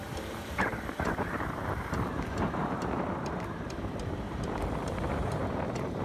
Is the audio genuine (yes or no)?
no